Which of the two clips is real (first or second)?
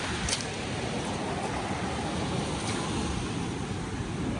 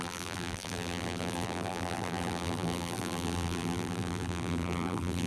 first